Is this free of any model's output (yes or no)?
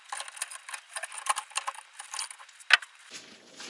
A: yes